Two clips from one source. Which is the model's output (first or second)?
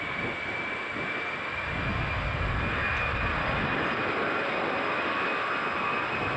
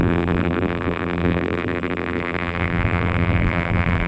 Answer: second